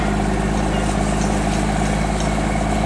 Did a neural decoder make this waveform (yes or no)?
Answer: no